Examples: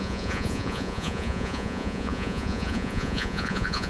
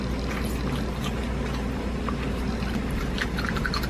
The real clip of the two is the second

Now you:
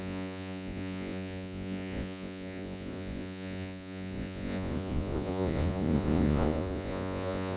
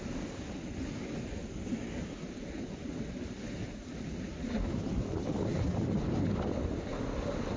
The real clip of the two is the second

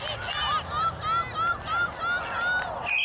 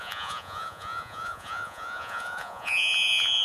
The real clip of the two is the first